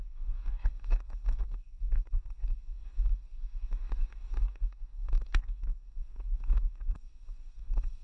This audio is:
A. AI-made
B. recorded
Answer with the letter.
A